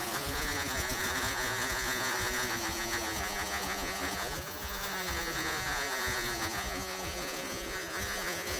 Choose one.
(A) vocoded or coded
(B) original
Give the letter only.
A